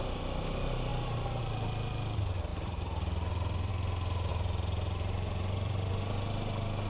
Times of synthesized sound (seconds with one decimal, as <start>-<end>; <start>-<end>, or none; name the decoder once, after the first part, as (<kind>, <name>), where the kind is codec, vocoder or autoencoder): 2.5-3.7 (vocoder, BigVGAN v2); 4.3-5.9